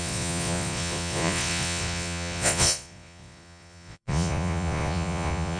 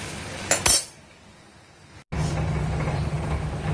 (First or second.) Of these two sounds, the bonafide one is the second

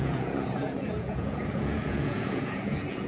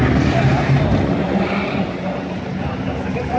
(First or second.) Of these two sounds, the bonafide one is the second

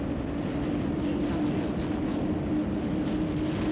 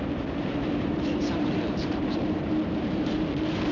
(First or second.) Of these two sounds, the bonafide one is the first